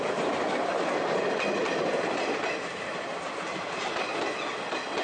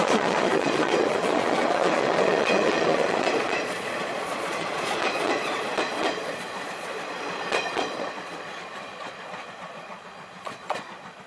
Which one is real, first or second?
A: first